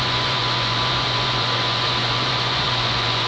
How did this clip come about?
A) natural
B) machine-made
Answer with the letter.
B